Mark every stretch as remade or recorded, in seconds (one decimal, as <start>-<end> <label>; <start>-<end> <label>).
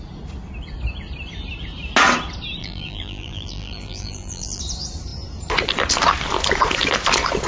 0.0-2.6 recorded; 2.6-4.6 remade; 4.6-7.5 recorded